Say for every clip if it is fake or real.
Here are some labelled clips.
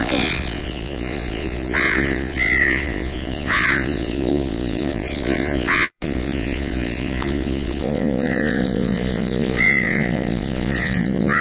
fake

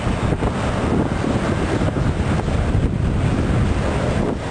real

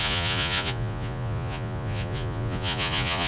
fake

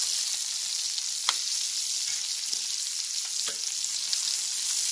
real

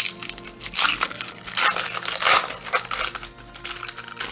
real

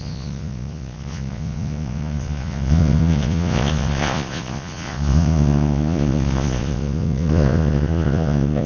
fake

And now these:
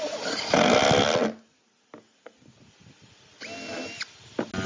real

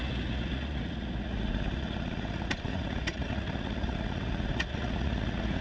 fake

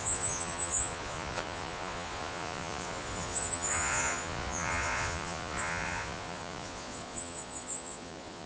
fake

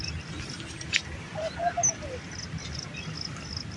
real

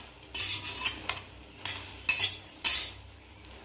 real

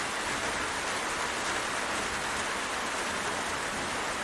real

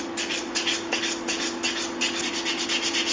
real